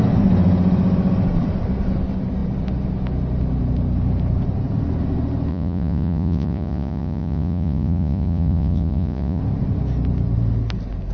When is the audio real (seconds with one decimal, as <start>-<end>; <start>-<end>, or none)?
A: 0.0-5.5; 9.4-11.1